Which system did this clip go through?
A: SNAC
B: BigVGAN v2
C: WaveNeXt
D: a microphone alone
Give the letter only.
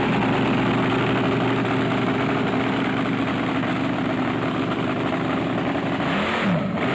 D